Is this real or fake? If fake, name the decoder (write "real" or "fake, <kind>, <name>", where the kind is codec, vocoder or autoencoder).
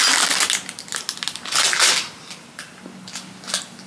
real